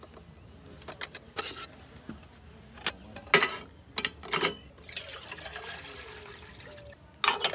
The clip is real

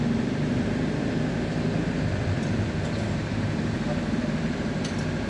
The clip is fake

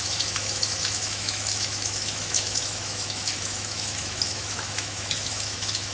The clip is fake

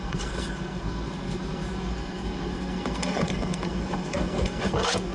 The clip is fake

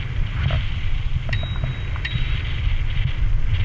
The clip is real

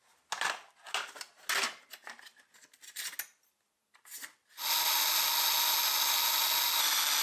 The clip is real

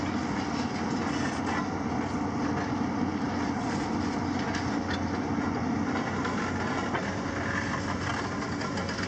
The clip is real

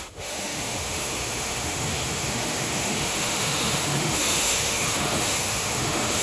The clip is fake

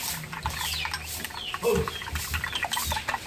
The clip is real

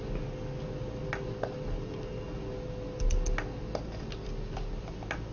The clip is real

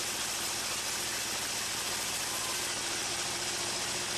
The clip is real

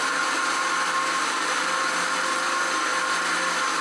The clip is real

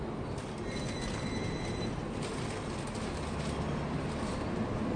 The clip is real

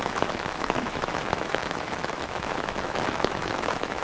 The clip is fake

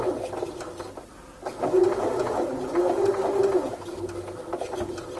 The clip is real